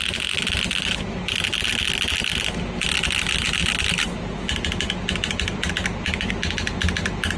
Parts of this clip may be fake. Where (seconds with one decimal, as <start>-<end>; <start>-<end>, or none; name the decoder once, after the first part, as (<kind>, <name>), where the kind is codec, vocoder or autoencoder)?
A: none